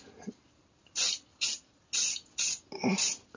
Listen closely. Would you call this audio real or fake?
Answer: real